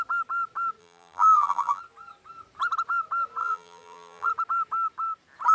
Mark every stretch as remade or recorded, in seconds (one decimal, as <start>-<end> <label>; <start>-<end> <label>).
0.0-0.8 recorded; 0.8-1.8 remade; 1.8-3.4 recorded; 3.4-4.3 remade; 4.3-5.5 recorded